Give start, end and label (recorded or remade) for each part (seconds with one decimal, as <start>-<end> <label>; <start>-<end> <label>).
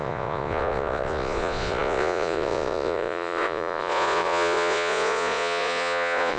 0.0-6.4 remade